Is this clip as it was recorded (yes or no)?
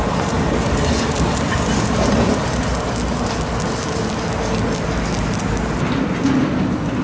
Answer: yes